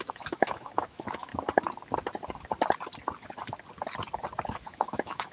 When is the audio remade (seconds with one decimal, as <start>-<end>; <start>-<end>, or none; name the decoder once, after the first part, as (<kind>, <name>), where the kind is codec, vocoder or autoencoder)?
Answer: 0.0-1.3 (autoencoder, DAC-VAE); 4.5-5.3